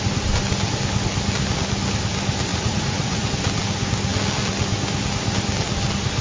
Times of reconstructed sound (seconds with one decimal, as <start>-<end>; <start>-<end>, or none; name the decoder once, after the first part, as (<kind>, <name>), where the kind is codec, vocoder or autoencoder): 2.5-3.3 (vocoder, Vocos)